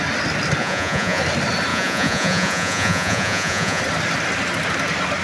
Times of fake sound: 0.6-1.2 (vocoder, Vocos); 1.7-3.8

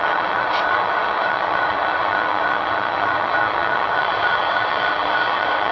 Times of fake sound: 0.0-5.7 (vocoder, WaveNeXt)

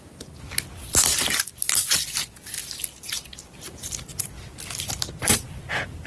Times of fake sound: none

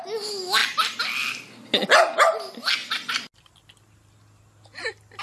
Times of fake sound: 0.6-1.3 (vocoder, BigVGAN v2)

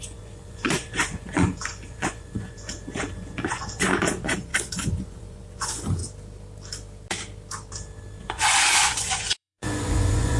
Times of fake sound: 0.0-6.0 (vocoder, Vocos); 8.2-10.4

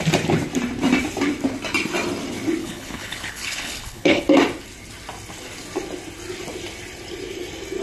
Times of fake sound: 2.6-4.2 (codec, HILCodec)

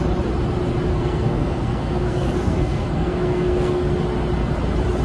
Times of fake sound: 0.9-3.9 (codec, SNAC)